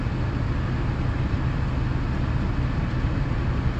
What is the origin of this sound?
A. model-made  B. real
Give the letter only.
B